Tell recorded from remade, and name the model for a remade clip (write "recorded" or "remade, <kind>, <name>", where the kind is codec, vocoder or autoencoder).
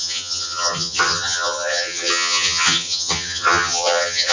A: remade, vocoder, HiFi-GAN